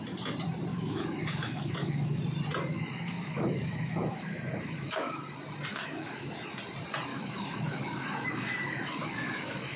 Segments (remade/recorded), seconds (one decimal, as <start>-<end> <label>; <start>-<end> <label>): 0.0-0.7 recorded; 0.7-2.2 remade; 2.2-2.7 recorded; 2.7-5.2 remade; 5.2-5.7 recorded; 5.7-6.4 remade; 6.4-7.1 recorded; 7.1-9.8 remade